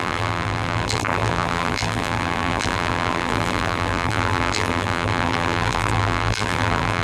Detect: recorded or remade remade